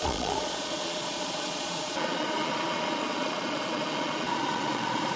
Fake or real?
fake